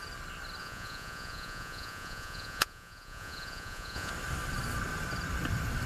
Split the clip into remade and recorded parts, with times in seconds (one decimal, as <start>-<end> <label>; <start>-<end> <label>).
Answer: 0.0-0.6 recorded; 0.6-4.1 remade; 4.1-5.9 recorded